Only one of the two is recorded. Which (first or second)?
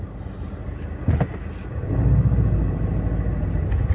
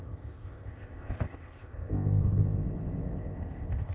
first